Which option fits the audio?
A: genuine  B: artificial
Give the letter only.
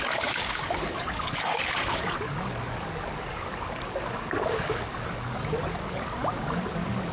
B